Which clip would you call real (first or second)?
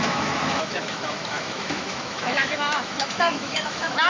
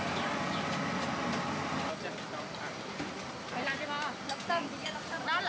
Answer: second